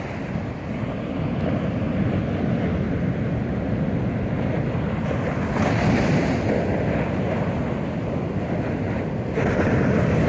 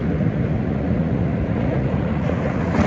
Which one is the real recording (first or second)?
first